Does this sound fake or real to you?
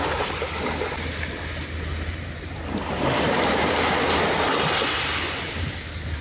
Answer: real